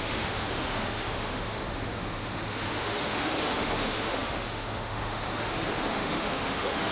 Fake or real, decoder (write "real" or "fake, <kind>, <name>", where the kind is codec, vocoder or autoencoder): fake, autoencoder, DAC-VAE